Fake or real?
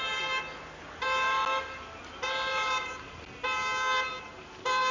real